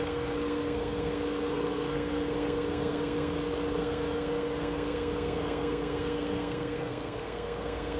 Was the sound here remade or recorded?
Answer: remade